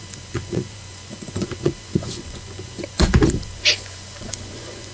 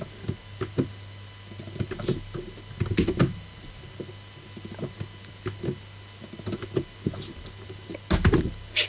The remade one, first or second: first